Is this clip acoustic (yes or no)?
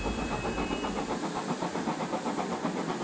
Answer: yes